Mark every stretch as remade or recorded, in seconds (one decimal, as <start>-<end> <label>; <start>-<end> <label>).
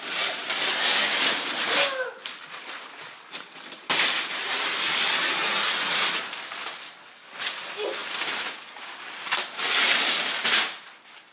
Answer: 0.0-5.4 recorded; 5.4-6.2 remade; 6.2-11.3 recorded